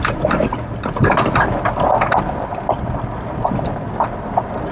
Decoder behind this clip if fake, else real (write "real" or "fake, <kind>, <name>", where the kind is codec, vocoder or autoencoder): real